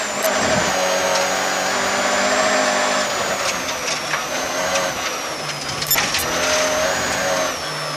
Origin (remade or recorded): recorded